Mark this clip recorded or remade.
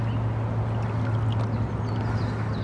recorded